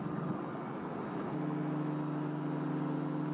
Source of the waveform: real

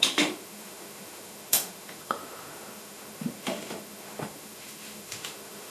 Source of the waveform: fake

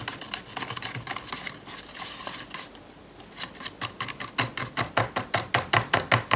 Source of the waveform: real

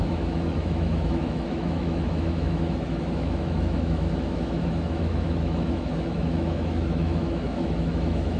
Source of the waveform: fake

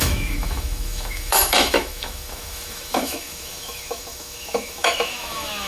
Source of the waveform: fake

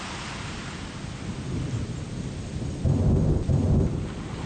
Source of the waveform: real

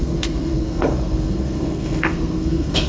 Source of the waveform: fake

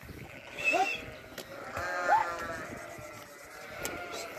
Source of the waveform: real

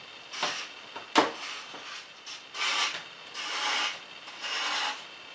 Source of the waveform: real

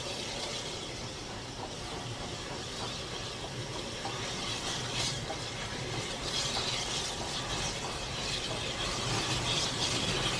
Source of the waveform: fake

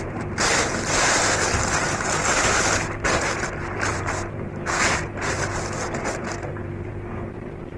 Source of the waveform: fake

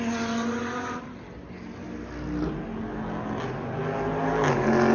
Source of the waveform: real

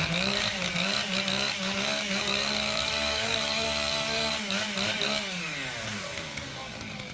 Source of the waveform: fake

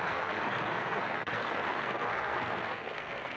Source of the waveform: fake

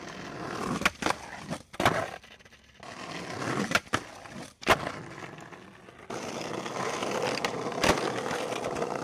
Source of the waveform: real